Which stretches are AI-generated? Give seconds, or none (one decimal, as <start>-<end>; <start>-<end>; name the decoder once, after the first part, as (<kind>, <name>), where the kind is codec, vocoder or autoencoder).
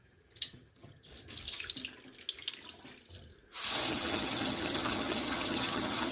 0.0-1.1 (vocoder, HiFi-GAN); 3.9-6.1